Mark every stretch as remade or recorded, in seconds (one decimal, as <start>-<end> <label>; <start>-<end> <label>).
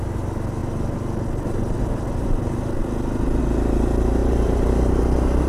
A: 0.0-4.2 recorded; 4.2-5.0 remade; 5.0-5.5 recorded